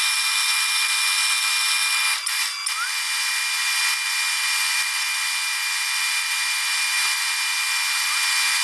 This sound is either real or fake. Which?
real